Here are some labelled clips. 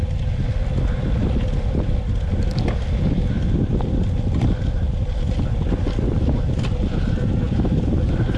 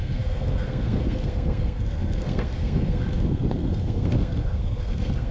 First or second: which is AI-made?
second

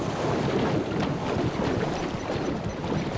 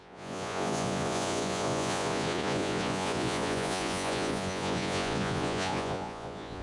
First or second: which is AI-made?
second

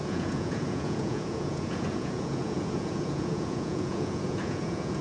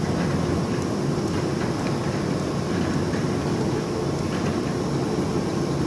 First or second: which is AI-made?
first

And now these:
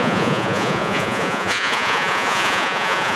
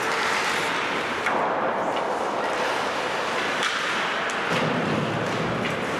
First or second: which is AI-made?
first